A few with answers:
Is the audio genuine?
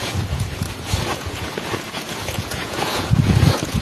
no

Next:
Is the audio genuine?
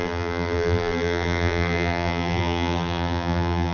no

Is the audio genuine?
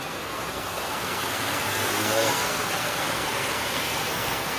no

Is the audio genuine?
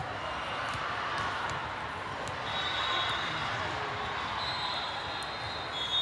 yes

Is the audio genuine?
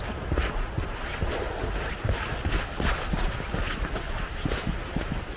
yes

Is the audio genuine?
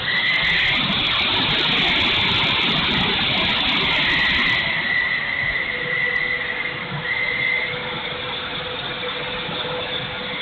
yes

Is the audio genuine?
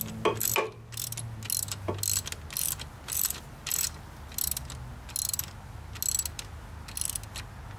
yes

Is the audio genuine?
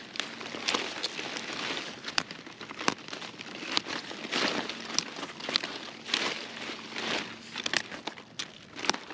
yes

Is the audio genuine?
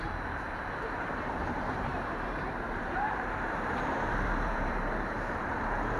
no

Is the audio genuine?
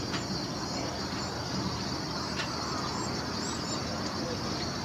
yes